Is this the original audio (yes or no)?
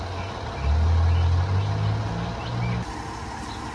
yes